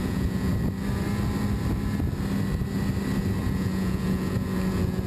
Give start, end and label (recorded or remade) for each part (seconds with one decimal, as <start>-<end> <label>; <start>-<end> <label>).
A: 0.0-0.5 remade; 0.5-3.4 recorded; 3.4-5.1 remade